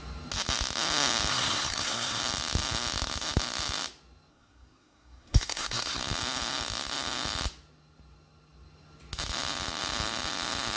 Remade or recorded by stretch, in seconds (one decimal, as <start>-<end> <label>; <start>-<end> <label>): 0.0-1.3 recorded; 1.3-2.2 remade; 2.2-4.3 recorded; 4.3-6.0 remade; 6.0-10.8 recorded